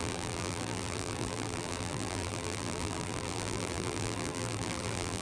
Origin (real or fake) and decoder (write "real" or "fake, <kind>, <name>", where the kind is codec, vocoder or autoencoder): fake, vocoder, BigVGAN v2